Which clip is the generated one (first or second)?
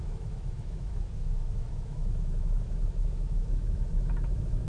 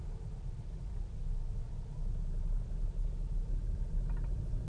first